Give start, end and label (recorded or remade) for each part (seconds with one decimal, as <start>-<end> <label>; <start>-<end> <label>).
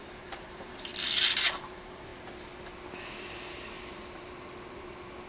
0.0-0.9 remade; 0.9-1.5 recorded; 1.5-2.1 remade; 2.1-5.3 recorded